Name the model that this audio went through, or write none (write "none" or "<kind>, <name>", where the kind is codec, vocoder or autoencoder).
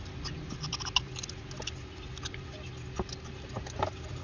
none